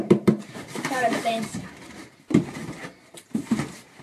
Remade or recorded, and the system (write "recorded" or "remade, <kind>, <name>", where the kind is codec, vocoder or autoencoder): remade, vocoder, BigVGAN v2